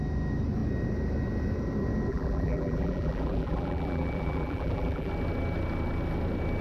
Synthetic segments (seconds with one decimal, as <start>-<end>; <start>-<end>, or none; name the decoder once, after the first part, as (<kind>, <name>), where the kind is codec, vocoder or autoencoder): 2.1-5.1 (vocoder, BigVGAN v2)